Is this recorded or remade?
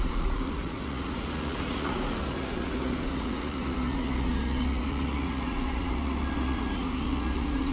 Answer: remade